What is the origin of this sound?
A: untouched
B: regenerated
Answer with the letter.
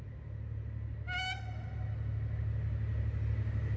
A